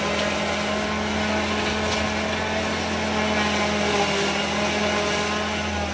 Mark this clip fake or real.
real